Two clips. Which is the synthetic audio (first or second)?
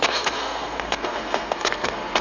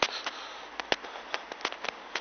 first